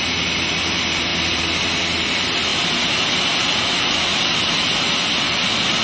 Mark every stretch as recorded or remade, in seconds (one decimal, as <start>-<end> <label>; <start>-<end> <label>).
0.0-5.8 recorded